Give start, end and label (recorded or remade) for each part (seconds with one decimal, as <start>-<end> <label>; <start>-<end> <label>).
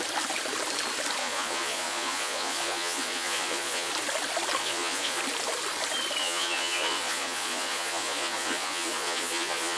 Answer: 0.0-1.2 recorded; 1.2-3.9 remade; 3.9-4.6 recorded; 4.6-5.2 remade; 5.2-6.2 recorded; 6.2-9.8 remade